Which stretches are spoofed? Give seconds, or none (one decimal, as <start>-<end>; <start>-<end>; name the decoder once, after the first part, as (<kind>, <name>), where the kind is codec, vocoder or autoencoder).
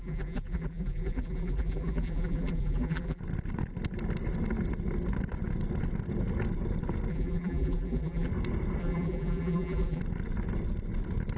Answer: 0.0-3.2 (vocoder, BigVGAN v2); 7.1-8.3; 8.8-10.0